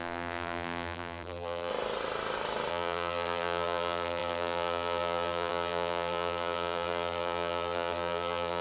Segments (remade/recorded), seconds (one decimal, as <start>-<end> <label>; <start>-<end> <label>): 0.0-1.7 remade; 1.7-2.7 recorded; 2.7-8.6 remade